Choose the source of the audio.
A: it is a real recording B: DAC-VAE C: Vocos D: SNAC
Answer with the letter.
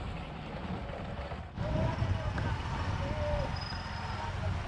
A